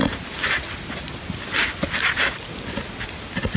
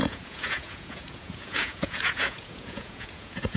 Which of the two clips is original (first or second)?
first